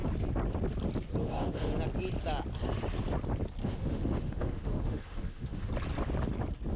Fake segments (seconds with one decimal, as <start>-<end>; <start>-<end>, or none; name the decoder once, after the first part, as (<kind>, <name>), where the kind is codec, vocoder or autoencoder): 1.2-1.8 (autoencoder, DAC-VAE); 3.6-5.7